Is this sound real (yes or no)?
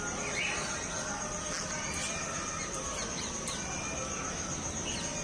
yes